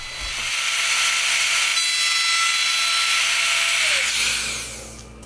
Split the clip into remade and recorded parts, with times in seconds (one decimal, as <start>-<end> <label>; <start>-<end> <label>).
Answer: 0.0-5.3 recorded